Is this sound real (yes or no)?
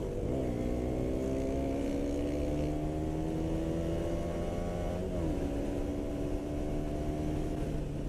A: yes